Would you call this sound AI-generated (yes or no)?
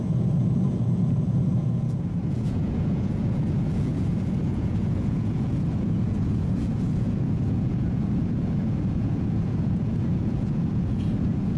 yes